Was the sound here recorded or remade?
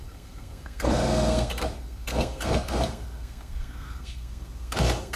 remade